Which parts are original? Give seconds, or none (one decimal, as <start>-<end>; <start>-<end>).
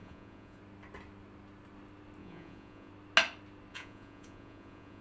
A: 0.6-2.2; 2.9-3.7